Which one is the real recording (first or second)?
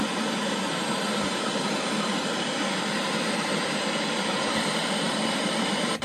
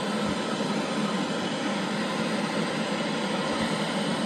second